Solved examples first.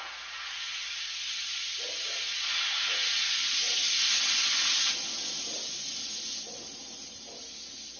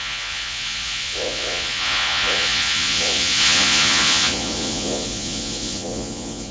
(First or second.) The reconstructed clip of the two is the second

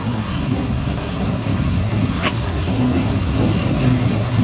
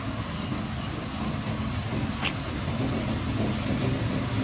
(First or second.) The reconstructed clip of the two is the first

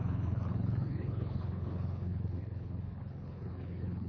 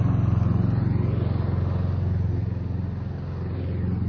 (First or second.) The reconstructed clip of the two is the first